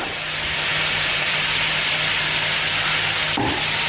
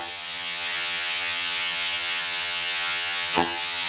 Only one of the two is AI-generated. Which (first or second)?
second